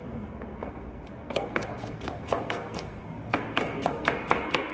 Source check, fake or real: fake